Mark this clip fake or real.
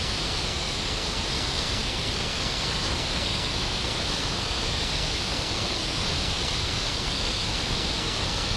fake